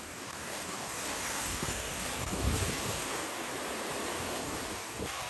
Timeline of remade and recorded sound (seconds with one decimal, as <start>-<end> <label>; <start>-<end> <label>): 0.0-3.5 remade; 3.5-4.1 recorded; 4.1-5.3 remade